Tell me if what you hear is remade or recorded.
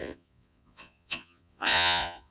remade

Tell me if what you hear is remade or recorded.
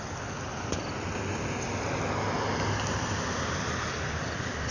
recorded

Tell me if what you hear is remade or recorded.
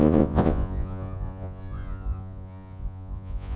remade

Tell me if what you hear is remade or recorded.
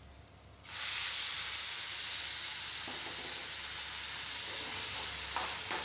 recorded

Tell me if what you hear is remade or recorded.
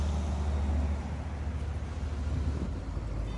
recorded